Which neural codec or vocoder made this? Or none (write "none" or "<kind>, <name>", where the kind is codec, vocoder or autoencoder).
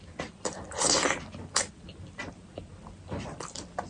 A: vocoder, BigVGAN v2